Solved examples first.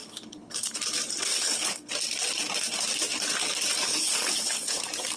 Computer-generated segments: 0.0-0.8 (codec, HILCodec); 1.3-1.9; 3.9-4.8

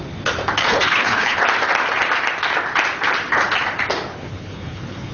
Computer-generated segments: 0.6-1.4 (codec, HILCodec); 4.1-5.1

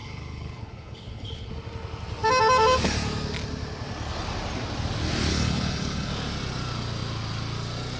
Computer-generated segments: 0.0-1.5 (codec, HILCodec); 5.3-6.1

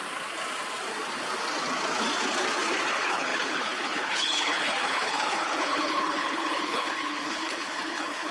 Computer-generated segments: 2.9-8.3 (codec, HILCodec)

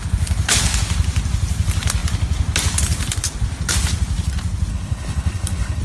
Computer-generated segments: 4.7-5.8 (codec, HILCodec)